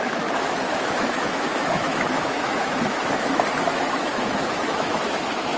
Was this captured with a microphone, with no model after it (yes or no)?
no